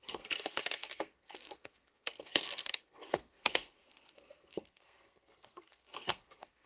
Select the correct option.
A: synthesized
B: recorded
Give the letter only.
A